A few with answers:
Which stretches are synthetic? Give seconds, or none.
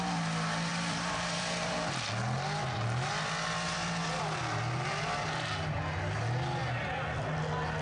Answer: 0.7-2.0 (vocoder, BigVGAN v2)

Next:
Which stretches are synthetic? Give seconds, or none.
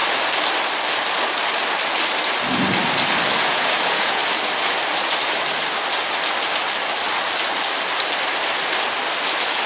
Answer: 3.4-4.2 (vocoder, Vocos)